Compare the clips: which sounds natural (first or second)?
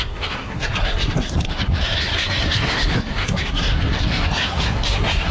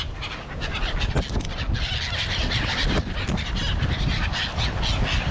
second